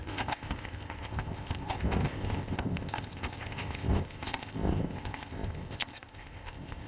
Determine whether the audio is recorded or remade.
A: remade